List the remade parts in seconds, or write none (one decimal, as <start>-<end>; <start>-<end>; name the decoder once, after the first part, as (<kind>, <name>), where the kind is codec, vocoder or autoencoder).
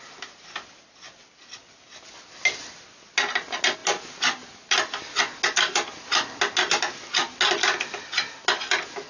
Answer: none